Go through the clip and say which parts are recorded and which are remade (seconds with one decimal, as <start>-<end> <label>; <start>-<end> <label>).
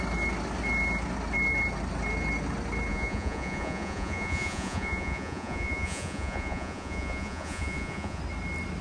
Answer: 0.0-2.9 recorded; 2.9-8.2 remade; 8.2-8.8 recorded